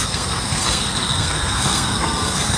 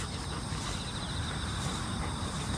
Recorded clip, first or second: second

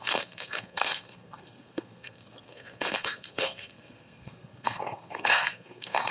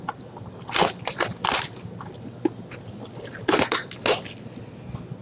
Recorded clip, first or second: second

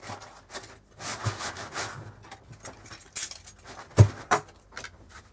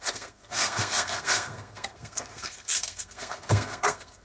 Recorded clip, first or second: first